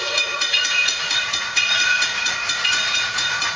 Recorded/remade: remade